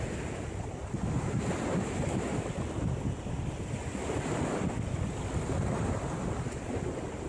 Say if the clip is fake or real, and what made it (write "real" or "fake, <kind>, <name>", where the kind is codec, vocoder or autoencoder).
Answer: real